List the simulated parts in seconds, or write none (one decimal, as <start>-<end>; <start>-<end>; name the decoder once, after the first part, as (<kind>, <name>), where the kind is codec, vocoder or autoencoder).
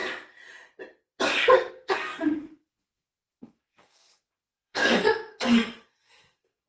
1.7-6.7 (codec, SNAC)